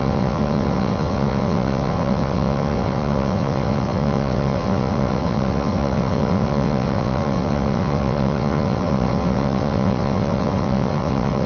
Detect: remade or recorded remade